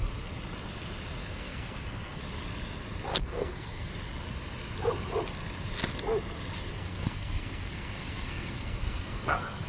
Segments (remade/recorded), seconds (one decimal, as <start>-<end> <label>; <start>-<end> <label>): 0.0-1.2 recorded; 1.2-2.2 remade; 2.2-3.1 recorded; 3.1-3.9 remade; 3.9-6.7 recorded; 6.7-9.7 remade